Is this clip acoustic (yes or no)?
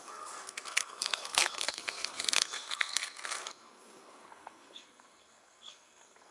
no